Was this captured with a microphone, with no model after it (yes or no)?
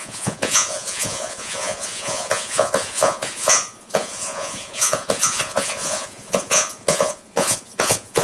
no